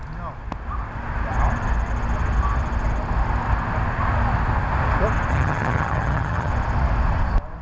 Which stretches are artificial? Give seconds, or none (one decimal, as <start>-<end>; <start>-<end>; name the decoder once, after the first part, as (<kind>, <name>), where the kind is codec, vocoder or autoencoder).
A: 5.3-6.5 (vocoder, HiFi-GAN)